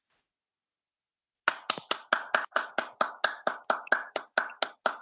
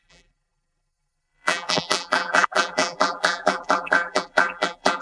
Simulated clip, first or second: second